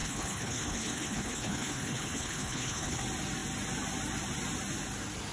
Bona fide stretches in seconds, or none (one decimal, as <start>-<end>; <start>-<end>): 3.0-5.3

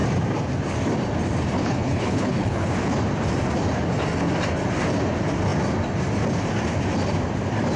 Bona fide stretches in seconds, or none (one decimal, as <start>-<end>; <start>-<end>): 0.0-1.6; 2.7-7.8

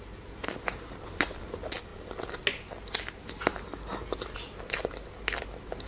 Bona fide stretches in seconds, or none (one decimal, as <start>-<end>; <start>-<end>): 0.0-5.9

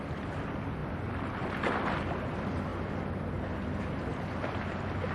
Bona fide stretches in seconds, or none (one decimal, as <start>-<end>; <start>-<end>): 0.0-5.1

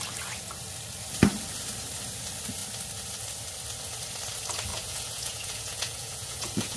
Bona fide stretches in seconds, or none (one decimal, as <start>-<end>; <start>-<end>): 0.0-4.7